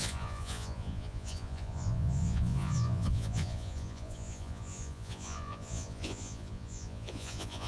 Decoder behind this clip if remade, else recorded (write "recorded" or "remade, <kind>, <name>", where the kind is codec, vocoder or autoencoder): remade, vocoder, Vocos